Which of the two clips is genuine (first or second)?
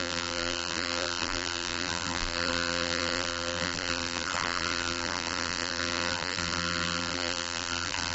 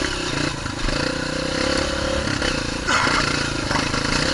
second